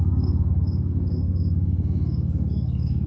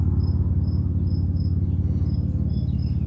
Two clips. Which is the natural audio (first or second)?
second